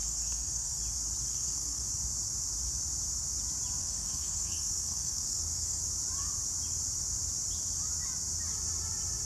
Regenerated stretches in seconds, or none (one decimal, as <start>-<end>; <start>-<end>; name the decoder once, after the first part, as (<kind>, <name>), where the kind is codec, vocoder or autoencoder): 0.0-0.8 (codec, SNAC); 1.3-1.9; 3.8-5.8